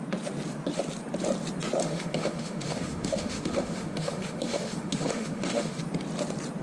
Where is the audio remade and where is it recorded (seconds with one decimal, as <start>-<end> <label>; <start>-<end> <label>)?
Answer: 0.0-1.8 recorded; 1.8-5.8 remade; 5.8-6.6 recorded